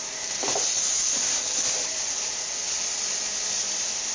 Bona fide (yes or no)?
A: no